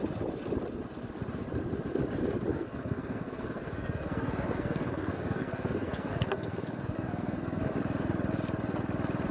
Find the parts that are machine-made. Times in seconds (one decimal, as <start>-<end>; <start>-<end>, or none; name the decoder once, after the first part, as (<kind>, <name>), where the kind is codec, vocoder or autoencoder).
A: 2.5-7.6 (codec, SNAC)